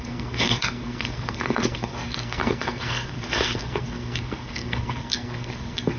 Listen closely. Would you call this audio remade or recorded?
remade